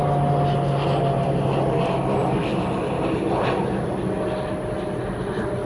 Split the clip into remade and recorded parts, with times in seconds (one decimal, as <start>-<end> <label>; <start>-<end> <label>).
0.0-5.7 recorded